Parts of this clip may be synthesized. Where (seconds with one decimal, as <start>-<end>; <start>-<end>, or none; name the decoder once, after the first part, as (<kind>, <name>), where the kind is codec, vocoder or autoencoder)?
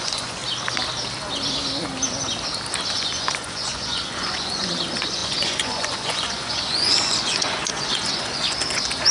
0.0-0.4 (vocoder, Vocos); 2.9-9.1